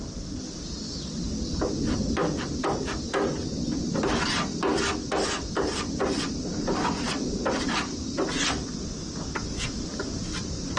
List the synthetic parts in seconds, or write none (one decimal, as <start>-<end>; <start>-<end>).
4.7-8.3